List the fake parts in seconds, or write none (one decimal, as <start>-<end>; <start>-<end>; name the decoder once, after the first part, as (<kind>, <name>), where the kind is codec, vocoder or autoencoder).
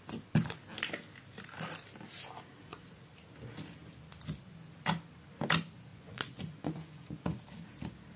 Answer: 5.9-7.3 (vocoder, Vocos)